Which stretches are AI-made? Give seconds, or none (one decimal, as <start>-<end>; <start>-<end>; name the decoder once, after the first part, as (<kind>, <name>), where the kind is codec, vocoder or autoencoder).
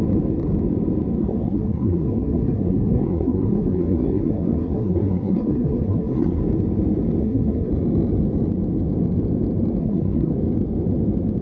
1.2-6.4 (codec, SNAC); 7.2-7.7; 9.8-10.3